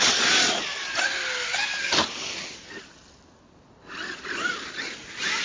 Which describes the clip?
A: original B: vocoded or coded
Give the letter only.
A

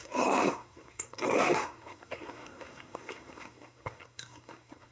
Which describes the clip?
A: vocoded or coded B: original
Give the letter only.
A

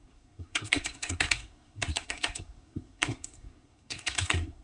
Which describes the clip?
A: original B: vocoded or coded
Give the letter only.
B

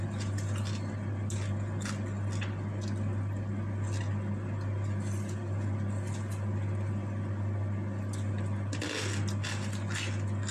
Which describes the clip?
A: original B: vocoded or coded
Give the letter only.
A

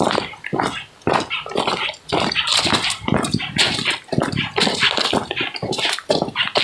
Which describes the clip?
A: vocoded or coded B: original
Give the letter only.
B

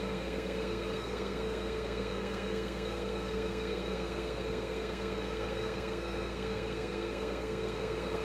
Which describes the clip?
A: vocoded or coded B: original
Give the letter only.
A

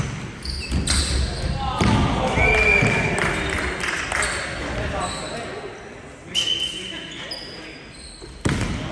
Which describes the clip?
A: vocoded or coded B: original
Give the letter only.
B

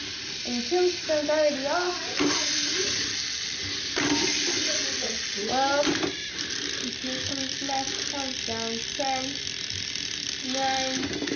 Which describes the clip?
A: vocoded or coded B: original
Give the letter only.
B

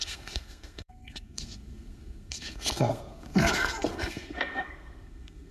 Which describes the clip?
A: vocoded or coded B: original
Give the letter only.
A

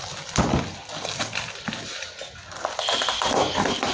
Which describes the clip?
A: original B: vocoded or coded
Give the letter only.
A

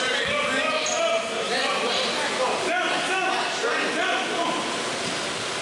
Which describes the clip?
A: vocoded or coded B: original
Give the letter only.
B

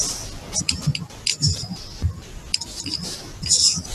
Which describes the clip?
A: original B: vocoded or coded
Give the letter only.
A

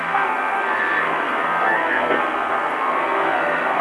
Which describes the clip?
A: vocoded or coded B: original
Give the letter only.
A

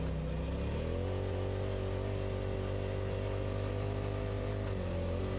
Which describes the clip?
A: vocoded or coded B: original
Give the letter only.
B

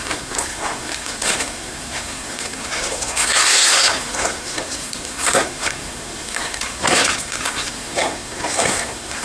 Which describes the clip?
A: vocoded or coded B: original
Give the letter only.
A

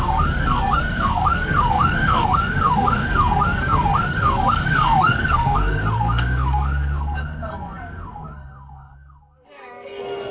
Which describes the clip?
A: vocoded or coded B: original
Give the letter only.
A